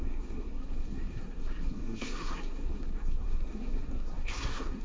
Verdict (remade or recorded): remade